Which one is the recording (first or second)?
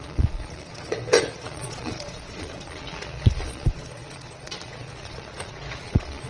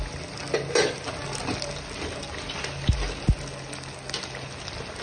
second